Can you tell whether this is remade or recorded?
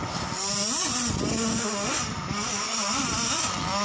recorded